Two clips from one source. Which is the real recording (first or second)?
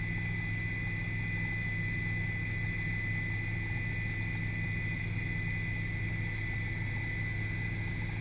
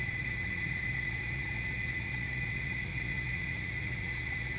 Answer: first